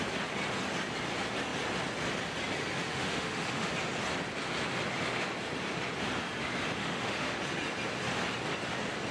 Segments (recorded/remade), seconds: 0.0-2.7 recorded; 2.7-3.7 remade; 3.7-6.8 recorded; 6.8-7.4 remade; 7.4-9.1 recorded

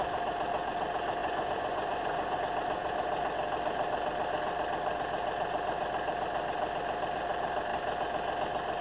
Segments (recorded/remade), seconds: 0.0-1.2 recorded; 1.2-2.4 remade; 2.4-8.8 recorded

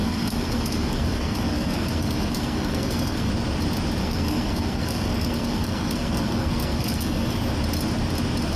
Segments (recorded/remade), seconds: 0.0-3.3 remade; 3.3-4.0 recorded; 4.0-7.3 remade; 7.3-8.6 recorded

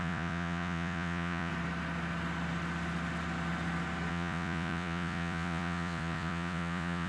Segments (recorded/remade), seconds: 0.0-1.5 remade; 1.5-4.1 recorded; 4.1-7.1 remade

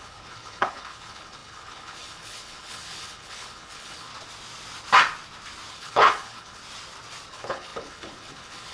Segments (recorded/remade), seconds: 0.0-4.1 remade; 4.1-5.7 recorded; 5.7-6.6 remade; 6.6-7.3 recorded; 7.3-8.7 remade

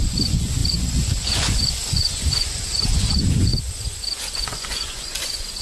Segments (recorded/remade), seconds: 0.0-5.6 remade

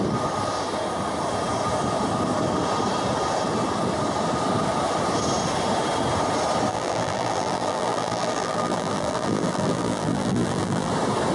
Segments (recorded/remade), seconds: 0.0-6.7 recorded; 6.7-10.9 remade; 10.9-11.3 recorded

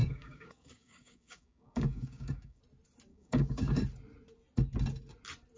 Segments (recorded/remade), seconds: 0.0-2.6 remade; 2.6-3.1 recorded; 3.1-3.8 remade; 3.8-5.6 recorded